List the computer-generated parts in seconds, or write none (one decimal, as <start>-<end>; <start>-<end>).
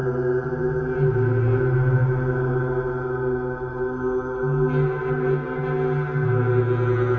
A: none